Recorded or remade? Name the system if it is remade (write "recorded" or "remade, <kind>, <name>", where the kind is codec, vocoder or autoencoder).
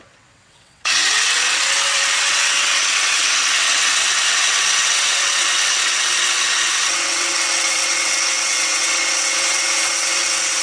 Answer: remade, vocoder, WaveNeXt